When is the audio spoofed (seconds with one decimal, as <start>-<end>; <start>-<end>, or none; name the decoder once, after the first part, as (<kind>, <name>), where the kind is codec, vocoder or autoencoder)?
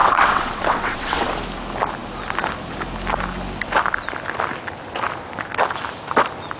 0.0-1.3 (vocoder, WaveNeXt)